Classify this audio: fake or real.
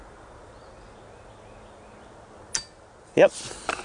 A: real